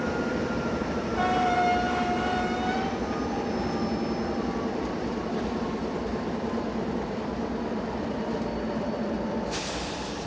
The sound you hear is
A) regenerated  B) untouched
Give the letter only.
B